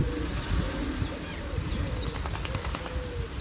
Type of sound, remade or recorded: recorded